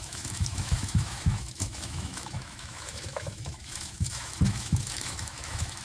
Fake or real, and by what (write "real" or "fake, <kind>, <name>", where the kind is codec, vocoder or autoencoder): fake, autoencoder, DAC-VAE